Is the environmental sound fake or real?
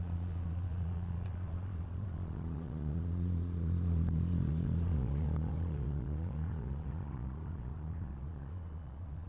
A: fake